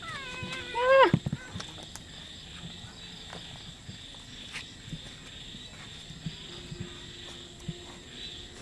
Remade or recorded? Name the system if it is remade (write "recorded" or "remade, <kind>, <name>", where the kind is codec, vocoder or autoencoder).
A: recorded